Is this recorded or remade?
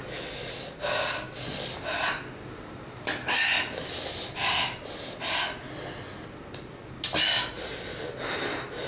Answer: recorded